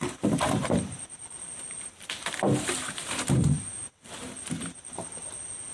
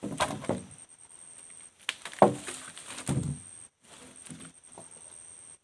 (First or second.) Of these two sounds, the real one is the second